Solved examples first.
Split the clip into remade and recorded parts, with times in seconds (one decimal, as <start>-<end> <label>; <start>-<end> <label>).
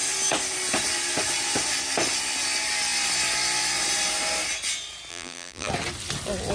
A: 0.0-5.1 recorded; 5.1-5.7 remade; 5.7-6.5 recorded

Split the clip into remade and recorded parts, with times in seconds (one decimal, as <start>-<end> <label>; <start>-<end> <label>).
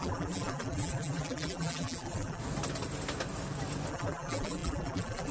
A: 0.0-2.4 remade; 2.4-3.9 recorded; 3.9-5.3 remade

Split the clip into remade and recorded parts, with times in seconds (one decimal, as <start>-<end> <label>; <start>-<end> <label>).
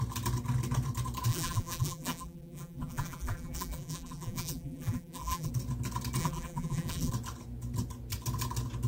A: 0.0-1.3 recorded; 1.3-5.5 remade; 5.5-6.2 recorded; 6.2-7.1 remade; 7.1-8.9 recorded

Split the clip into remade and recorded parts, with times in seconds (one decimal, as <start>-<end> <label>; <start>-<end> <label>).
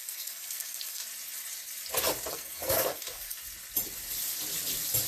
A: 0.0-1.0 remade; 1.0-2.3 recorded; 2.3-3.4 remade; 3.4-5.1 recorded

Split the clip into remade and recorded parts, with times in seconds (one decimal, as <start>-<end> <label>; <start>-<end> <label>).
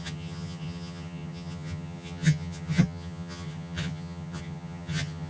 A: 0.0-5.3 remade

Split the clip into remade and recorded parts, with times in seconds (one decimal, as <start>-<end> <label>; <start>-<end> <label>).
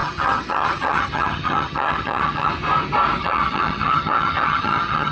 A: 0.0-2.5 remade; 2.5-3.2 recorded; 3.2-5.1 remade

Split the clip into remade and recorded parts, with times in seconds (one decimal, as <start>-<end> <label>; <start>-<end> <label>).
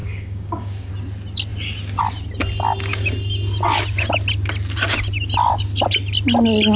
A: 0.0-0.9 remade; 0.9-6.8 recorded